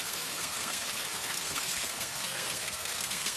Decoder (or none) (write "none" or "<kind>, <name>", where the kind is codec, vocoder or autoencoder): codec, SNAC